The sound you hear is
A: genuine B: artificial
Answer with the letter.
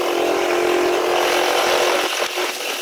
A